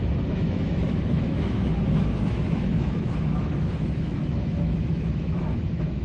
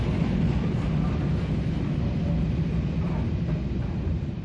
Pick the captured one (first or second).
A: second